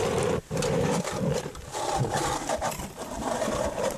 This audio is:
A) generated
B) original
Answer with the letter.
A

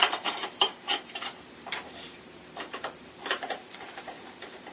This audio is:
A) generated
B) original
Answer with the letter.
A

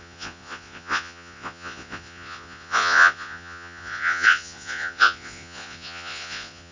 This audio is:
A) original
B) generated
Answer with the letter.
B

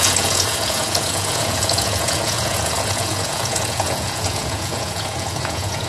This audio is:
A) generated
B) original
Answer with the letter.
A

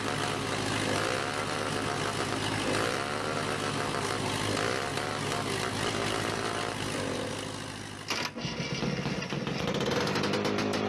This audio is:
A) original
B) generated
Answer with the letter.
A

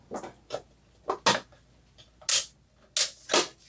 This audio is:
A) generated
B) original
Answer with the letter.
B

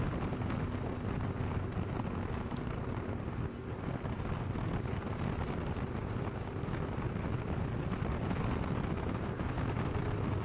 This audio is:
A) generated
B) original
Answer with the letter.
B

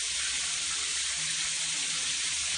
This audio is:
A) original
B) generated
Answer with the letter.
A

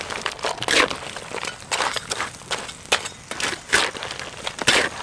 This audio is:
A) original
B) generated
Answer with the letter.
A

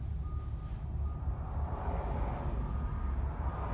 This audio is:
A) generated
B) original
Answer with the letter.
B